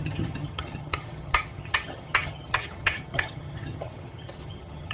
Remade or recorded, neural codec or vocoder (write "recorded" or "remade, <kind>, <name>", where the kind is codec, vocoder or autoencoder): remade, vocoder, HiFi-GAN